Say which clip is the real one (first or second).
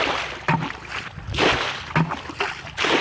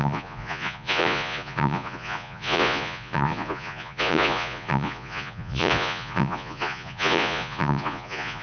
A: first